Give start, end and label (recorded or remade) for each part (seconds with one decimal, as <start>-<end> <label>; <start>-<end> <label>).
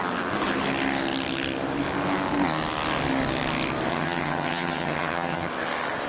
0.0-3.9 recorded; 3.9-5.5 remade; 5.5-6.1 recorded